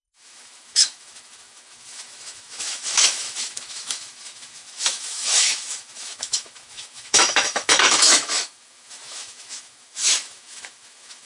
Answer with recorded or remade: remade